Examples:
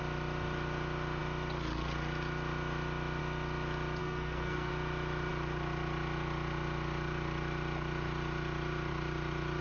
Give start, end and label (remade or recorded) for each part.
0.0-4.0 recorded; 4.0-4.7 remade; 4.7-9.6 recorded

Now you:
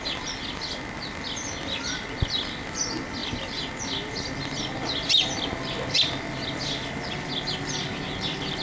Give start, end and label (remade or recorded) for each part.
0.0-8.6 recorded

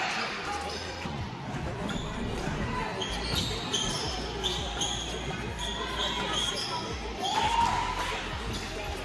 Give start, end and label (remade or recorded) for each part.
0.0-0.8 recorded; 0.8-1.9 remade; 1.9-9.0 recorded